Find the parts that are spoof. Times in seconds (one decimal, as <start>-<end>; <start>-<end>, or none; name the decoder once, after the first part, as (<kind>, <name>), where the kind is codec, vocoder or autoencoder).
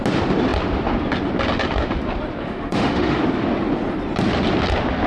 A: 2.4-3.2 (autoencoder, DAC-VAE)